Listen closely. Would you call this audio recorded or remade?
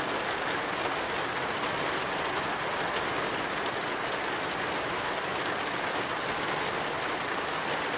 recorded